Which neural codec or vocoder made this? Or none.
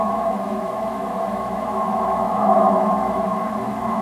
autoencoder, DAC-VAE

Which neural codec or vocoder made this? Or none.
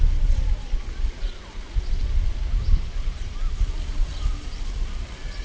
none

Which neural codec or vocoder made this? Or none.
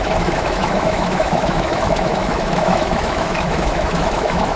autoencoder, DAC-VAE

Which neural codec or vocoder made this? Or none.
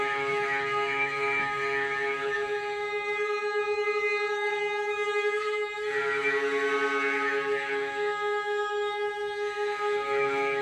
autoencoder, DAC-VAE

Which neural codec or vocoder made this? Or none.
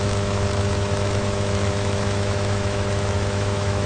autoencoder, DAC-VAE